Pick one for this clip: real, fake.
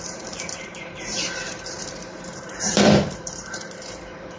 fake